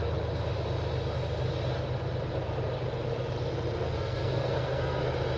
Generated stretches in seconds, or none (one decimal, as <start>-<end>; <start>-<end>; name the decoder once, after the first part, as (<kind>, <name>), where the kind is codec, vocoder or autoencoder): 3.8-5.0 (codec, SNAC)